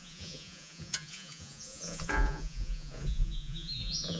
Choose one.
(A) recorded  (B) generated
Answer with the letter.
B